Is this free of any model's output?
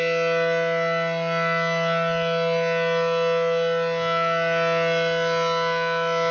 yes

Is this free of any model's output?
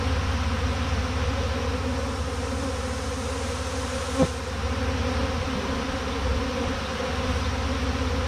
yes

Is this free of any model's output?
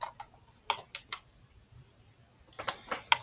yes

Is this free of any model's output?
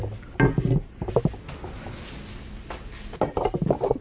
yes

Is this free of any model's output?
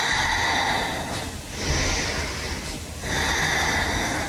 yes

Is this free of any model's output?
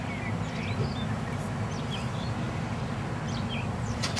yes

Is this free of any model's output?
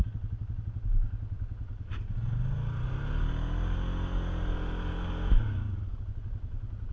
yes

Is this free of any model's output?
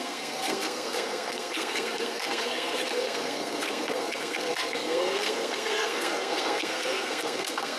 no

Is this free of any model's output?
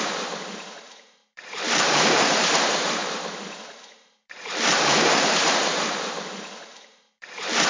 no